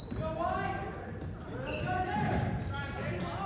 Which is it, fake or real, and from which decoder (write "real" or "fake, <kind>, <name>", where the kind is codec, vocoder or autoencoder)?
real